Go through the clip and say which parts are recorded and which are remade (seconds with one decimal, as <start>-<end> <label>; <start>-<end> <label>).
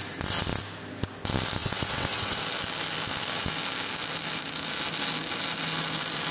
0.0-1.6 recorded; 1.6-2.4 remade; 2.4-6.3 recorded